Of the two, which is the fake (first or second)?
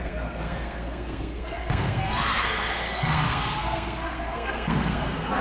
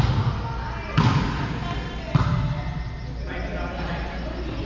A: first